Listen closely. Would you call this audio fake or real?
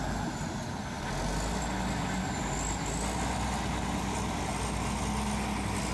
real